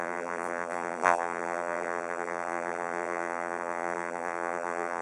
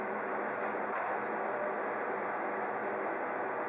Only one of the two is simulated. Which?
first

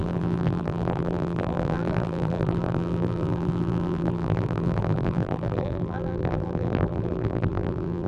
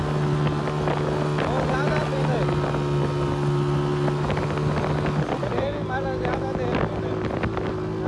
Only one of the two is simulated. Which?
first